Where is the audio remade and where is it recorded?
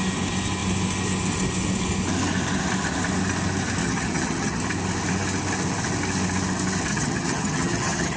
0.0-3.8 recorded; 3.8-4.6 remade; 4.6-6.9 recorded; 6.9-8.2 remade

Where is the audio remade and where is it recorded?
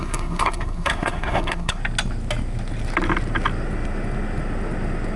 0.0-1.8 remade; 1.8-5.2 recorded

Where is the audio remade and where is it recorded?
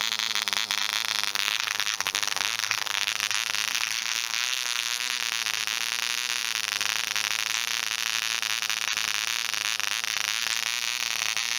0.0-1.3 recorded; 1.3-3.1 remade; 3.1-3.7 recorded; 3.7-5.0 remade; 5.0-11.6 recorded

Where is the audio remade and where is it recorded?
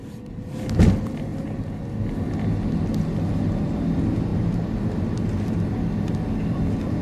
0.0-7.0 recorded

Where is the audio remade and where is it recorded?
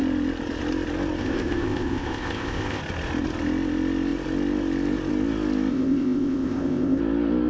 0.0-1.2 recorded; 1.2-2.8 remade; 2.8-5.7 recorded; 5.7-7.0 remade; 7.0-7.5 recorded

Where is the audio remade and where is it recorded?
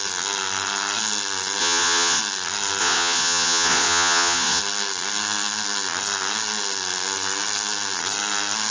0.0-1.6 recorded; 1.6-2.2 remade; 2.2-2.8 recorded; 2.8-4.6 remade; 4.6-8.7 recorded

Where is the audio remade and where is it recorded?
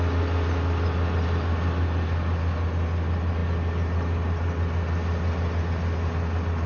0.0-6.7 recorded